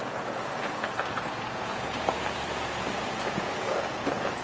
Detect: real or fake fake